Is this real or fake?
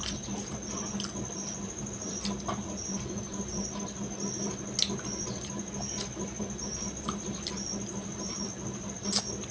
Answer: real